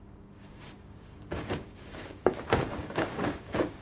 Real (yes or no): no